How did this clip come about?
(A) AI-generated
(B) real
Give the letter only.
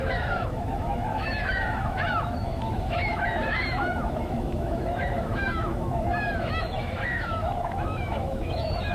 A